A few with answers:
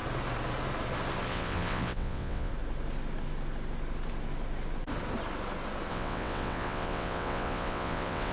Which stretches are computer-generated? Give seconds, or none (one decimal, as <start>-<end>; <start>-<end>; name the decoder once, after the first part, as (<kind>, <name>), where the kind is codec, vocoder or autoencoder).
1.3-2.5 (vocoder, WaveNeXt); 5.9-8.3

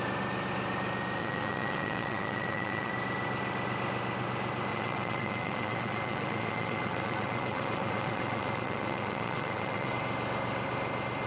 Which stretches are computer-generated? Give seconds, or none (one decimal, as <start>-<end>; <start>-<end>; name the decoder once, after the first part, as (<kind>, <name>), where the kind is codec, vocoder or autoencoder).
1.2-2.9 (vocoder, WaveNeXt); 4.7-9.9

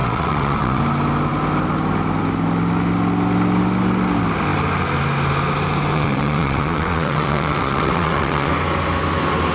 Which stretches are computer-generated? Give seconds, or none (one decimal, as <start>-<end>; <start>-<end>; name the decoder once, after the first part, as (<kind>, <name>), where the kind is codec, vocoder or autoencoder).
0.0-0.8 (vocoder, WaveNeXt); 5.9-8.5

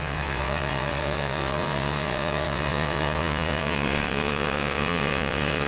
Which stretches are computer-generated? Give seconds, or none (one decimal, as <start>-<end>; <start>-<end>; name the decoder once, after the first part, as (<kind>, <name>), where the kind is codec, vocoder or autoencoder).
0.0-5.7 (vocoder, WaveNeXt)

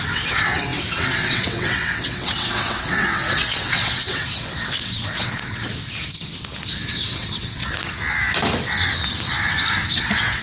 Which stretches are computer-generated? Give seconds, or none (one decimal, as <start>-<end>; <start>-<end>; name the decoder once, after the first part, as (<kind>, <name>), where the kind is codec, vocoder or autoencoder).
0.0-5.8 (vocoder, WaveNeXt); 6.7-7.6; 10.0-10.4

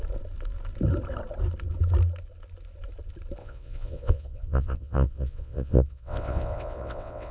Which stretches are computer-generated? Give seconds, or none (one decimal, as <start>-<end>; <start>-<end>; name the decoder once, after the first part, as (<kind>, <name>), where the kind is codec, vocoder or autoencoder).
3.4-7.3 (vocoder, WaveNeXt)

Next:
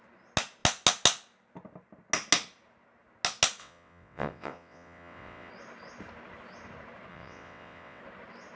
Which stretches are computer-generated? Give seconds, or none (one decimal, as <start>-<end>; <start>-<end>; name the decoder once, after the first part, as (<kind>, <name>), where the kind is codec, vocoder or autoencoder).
3.6-5.5 (vocoder, WaveNeXt); 7.1-8.0

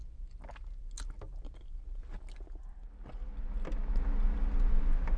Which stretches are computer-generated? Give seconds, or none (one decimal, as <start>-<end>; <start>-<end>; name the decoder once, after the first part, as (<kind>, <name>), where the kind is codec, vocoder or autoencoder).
none